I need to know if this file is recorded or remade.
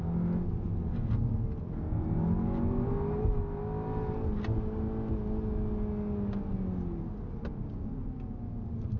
recorded